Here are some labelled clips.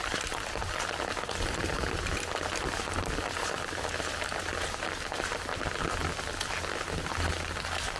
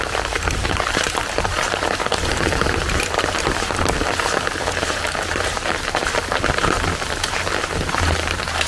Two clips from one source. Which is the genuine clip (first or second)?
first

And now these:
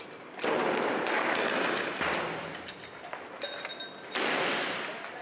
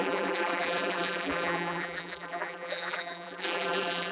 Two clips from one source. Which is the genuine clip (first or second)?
first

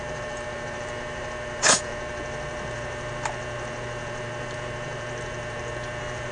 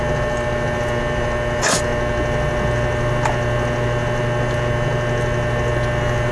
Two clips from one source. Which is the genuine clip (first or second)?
second